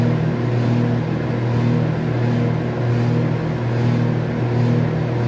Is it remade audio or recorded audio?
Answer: recorded